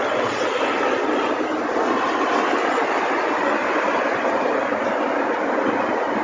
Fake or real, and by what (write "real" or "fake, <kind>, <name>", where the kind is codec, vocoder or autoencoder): real